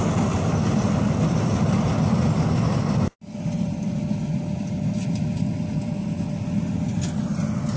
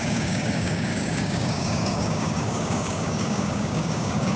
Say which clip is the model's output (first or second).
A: second